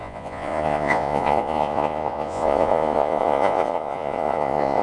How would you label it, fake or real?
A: fake